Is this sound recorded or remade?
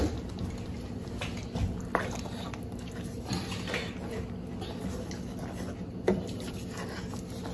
recorded